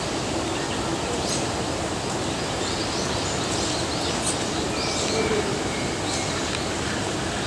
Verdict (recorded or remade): recorded